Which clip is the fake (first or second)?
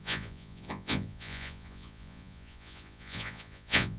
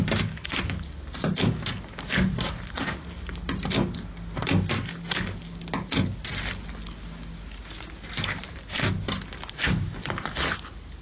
first